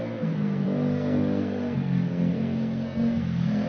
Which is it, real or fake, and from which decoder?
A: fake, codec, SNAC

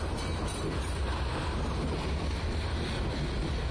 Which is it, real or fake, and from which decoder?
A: real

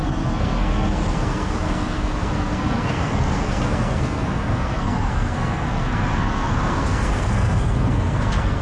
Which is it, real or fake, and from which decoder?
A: fake, codec, SNAC